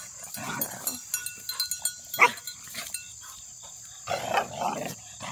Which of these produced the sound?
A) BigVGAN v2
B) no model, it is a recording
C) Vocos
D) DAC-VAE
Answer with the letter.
B